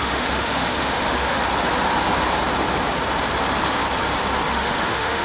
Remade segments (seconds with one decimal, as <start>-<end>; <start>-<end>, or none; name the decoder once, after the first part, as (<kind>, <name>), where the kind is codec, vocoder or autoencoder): 0.0-1.4 (autoencoder, DAC-VAE); 4.5-5.2